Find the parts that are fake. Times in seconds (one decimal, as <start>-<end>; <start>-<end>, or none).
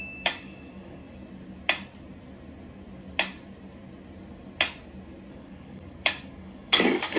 0.0-1.0; 5.3-7.2